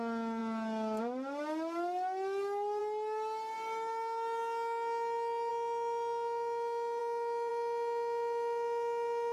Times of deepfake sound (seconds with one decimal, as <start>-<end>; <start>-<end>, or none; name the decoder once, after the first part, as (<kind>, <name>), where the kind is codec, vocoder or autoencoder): none